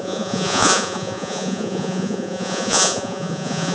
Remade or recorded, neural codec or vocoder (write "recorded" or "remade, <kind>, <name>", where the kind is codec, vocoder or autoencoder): remade, vocoder, Vocos